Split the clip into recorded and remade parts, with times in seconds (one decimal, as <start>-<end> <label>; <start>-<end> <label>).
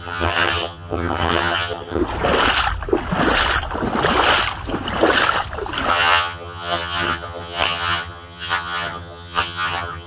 0.0-2.0 remade; 2.0-5.9 recorded; 5.9-10.1 remade